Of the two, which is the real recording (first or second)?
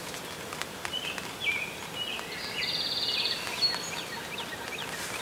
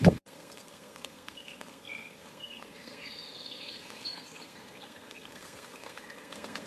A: first